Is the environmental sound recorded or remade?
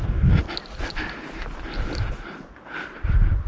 recorded